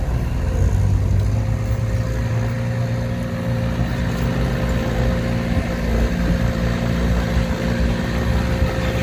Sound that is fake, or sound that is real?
real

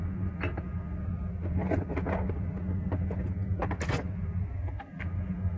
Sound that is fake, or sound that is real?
real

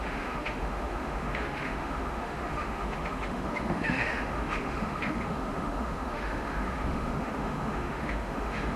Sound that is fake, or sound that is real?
fake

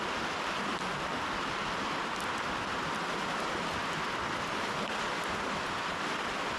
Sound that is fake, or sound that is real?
real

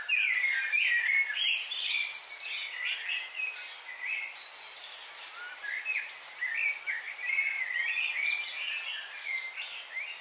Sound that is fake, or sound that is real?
real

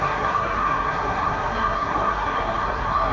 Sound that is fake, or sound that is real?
fake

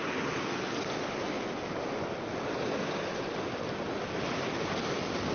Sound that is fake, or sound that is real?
real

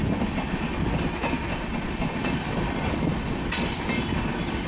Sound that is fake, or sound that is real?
real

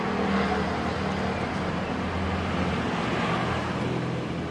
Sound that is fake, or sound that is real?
real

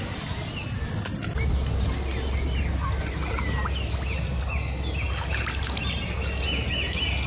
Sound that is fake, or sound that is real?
real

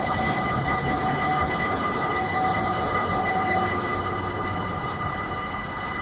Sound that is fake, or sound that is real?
fake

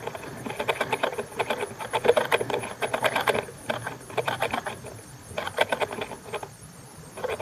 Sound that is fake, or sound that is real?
real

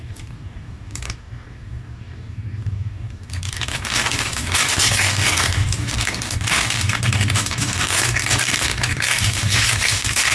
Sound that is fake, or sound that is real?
fake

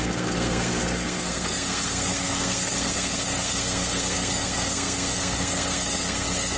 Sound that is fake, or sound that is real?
fake